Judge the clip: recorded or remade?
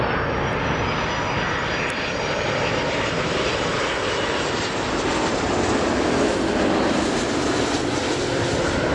recorded